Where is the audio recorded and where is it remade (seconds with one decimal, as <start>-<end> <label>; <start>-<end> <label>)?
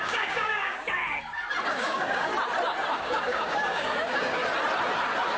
0.0-1.0 remade; 1.0-1.7 recorded; 1.7-2.3 remade; 2.3-2.9 recorded; 2.9-4.4 remade; 4.4-5.4 recorded